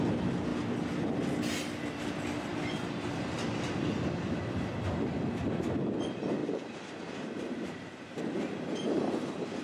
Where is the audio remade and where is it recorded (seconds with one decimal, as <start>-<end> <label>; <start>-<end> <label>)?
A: 0.0-6.4 recorded; 6.4-8.2 remade; 8.2-9.6 recorded